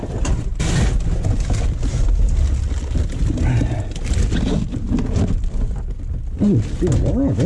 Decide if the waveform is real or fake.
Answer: real